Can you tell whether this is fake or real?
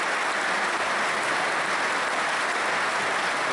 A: real